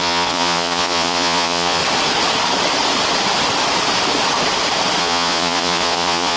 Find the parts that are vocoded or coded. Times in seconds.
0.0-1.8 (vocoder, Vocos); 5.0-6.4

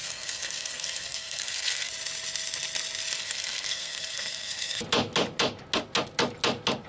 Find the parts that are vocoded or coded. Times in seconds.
0.0-1.9 (codec, SNAC); 3.2-4.8

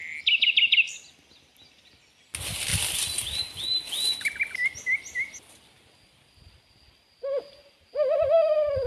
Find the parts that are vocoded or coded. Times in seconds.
none

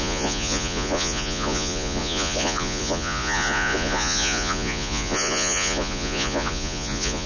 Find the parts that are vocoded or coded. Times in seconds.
0.0-7.3 (vocoder, Vocos)